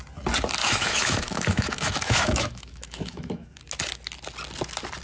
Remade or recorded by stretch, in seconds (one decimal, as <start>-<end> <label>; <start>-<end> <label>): 0.0-0.6 recorded; 0.6-3.6 remade; 3.6-5.0 recorded